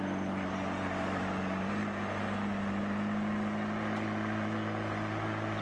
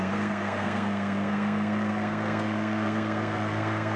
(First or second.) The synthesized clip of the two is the second